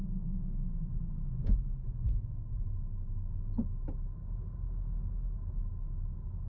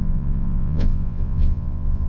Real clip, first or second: first